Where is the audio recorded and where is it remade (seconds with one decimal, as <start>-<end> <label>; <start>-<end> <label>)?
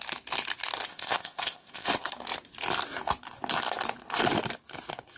0.0-0.9 recorded; 0.9-1.9 remade; 1.9-5.2 recorded